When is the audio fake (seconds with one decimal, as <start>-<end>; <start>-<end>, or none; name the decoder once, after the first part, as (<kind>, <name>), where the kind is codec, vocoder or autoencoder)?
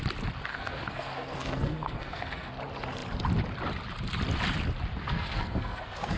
0.5-2.5 (codec, SNAC); 5.0-6.2